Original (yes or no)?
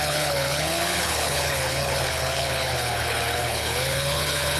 no